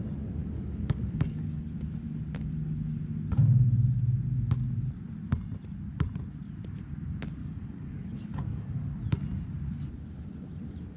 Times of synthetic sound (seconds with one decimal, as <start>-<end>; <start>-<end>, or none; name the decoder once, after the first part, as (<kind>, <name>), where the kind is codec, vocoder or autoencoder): 0.4-1.6 (codec, DAC); 7.4-8.8